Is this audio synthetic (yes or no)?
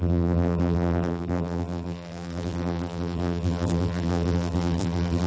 yes